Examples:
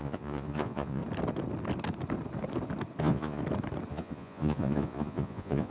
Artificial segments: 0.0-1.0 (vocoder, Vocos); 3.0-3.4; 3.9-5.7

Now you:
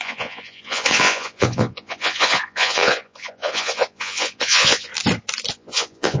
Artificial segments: 0.0-4.9 (vocoder, Vocos); 5.5-6.2

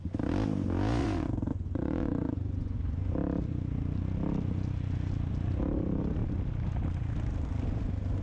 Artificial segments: 1.0-3.1 (vocoder, Vocos)

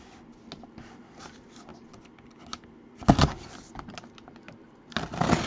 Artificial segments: none

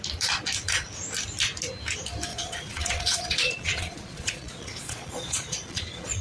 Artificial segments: 2.3-6.2 (vocoder, Vocos)